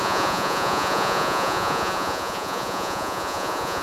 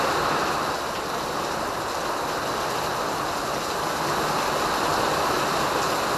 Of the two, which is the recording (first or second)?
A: second